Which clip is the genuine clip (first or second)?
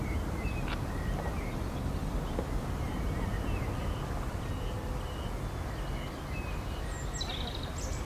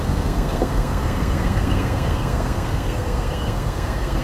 first